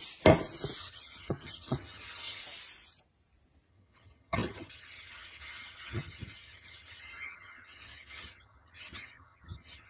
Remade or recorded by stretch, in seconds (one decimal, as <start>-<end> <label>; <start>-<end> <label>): 0.0-0.8 recorded; 0.8-2.4 remade; 2.4-3.7 recorded; 3.7-9.9 remade